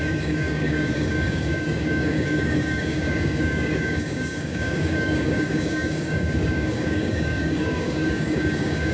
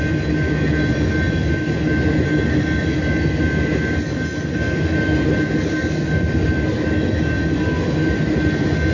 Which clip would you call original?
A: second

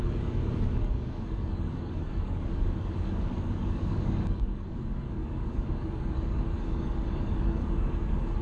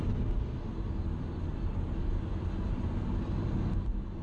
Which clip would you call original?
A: second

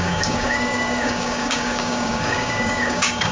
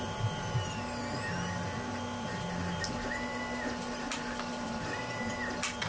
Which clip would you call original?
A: second